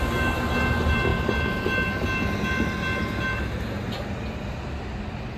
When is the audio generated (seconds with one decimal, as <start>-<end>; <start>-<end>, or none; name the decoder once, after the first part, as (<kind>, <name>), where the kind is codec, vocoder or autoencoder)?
none